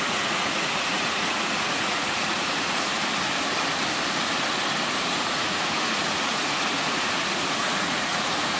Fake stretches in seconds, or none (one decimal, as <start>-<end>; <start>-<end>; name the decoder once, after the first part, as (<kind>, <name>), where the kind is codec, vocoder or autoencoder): 0.0-2.9 (vocoder, Vocos); 5.0-8.6